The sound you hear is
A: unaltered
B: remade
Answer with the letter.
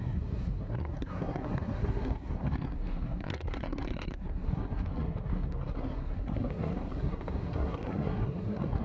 B